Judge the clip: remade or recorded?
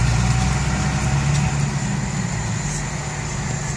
recorded